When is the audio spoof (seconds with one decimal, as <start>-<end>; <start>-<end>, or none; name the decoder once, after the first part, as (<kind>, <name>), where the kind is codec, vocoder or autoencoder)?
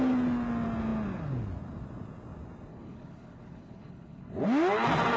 2.7-4.2 (codec, HILCodec)